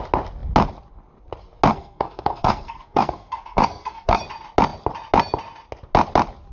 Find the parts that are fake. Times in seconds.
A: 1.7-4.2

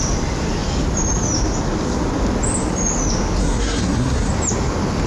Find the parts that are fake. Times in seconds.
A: 3.4-4.3

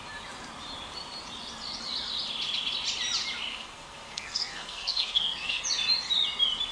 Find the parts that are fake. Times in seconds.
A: 3.5-5.6

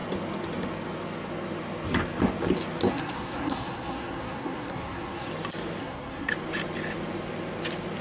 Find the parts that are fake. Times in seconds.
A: 2.9-5.3; 5.8-6.3